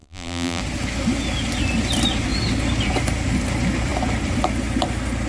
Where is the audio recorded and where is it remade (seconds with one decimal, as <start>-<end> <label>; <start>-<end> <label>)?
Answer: 0.0-0.6 remade; 0.6-5.3 recorded